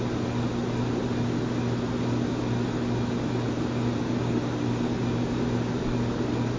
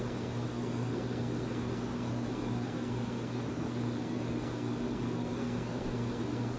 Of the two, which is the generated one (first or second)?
second